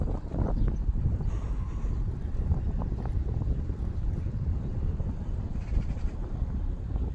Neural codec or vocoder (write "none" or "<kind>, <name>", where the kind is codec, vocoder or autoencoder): none